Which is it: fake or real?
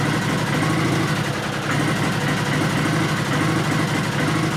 real